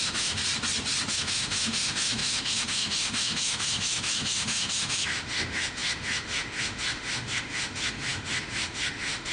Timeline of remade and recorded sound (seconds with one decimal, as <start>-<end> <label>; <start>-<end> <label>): 0.0-0.4 remade; 0.4-1.1 recorded; 1.1-9.3 remade